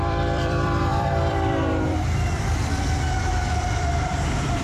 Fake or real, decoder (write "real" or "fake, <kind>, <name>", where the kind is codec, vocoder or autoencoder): fake, vocoder, BigVGAN v2